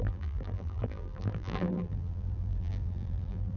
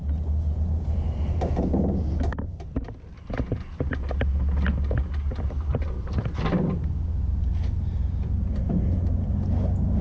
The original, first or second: second